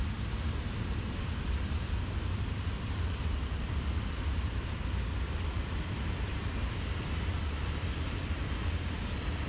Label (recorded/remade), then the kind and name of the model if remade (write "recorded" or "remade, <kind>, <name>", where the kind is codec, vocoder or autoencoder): remade, vocoder, BigVGAN v2